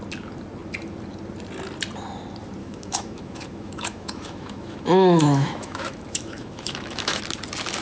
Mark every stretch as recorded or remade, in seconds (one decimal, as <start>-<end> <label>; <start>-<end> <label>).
0.0-2.6 recorded; 2.6-7.2 remade; 7.2-7.8 recorded